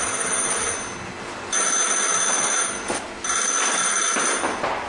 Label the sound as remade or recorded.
recorded